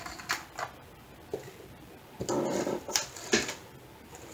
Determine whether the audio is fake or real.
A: real